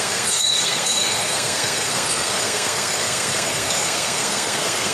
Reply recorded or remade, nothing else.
remade